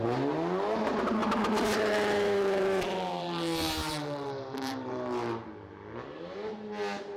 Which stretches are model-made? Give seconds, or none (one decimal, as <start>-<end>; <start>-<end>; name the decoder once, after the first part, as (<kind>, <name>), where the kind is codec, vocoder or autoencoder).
1.2-5.5 (vocoder, BigVGAN v2)